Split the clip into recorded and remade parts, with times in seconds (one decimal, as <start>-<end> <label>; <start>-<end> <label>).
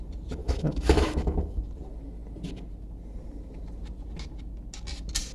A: 0.0-0.4 recorded; 0.4-1.6 remade; 1.6-5.3 recorded